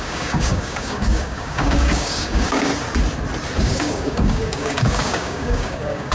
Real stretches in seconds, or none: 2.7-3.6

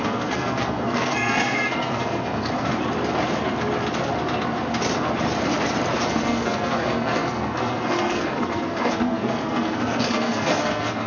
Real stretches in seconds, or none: 2.7-6.1

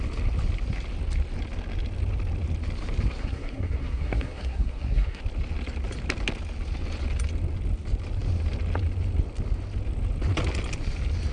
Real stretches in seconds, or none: 0.0-3.2; 5.2-11.3

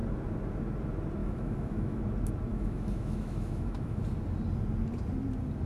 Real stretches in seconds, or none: 0.0-1.2; 2.0-2.5; 4.0-5.7

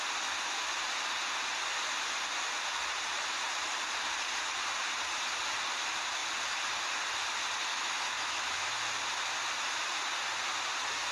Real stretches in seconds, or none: 0.0-7.7; 8.7-11.1

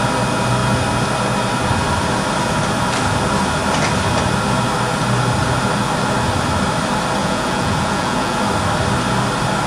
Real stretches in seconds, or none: 0.0-7.2; 8.4-9.7